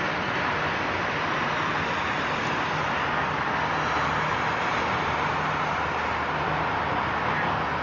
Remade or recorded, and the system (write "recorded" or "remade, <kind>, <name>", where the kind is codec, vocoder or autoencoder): recorded